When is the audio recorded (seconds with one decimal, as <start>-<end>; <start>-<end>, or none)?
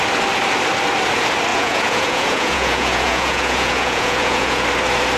0.0-1.5; 4.6-5.2